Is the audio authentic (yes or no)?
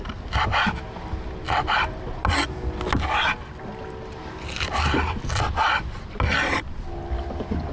yes